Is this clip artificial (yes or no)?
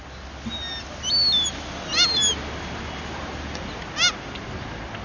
no